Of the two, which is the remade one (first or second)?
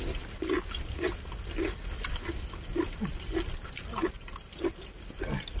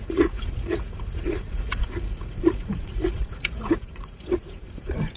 second